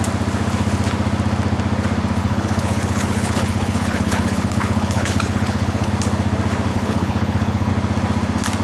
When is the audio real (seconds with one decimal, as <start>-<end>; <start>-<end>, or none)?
0.0-2.2; 5.9-6.7; 7.7-8.6